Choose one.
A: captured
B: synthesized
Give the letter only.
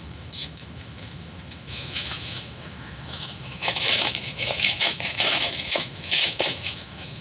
B